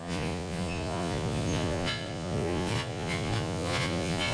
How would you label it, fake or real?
fake